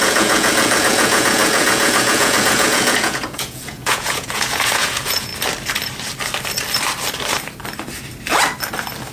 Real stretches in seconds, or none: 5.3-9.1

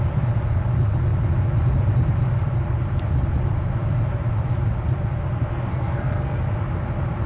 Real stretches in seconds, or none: 0.0-5.7; 6.4-7.3

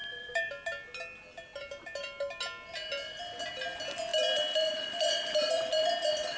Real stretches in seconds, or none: 0.5-4.1; 5.9-6.4